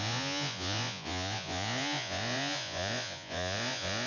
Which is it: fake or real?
fake